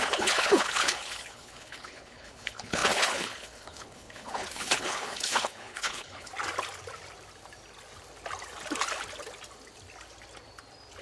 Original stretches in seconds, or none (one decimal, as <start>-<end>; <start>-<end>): 6.3-11.0